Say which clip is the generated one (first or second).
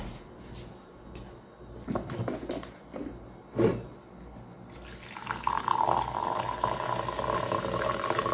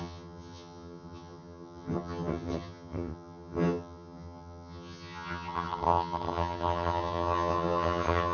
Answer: second